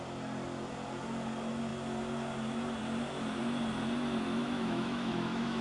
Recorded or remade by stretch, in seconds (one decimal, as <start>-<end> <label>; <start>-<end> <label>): 0.0-4.4 recorded; 4.4-5.6 remade